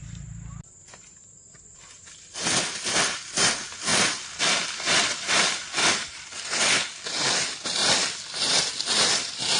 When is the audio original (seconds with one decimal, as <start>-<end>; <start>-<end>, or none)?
0.0-3.9; 6.5-7.8